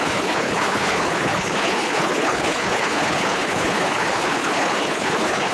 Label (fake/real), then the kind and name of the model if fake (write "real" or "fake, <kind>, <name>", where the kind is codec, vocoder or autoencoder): fake, codec, HILCodec